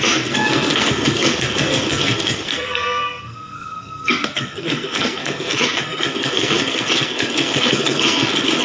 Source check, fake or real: fake